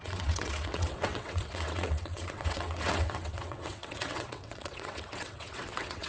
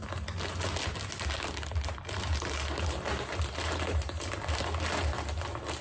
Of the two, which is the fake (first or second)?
first